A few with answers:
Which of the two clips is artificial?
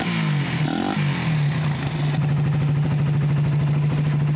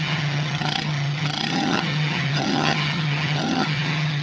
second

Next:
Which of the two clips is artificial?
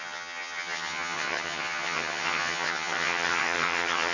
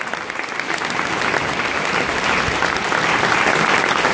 first